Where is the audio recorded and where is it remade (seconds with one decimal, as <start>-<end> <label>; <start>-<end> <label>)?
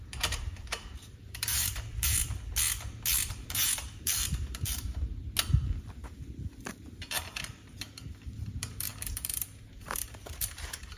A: 0.0-2.2 remade; 2.2-3.3 recorded; 3.3-5.1 remade; 5.1-6.6 recorded; 6.6-11.0 remade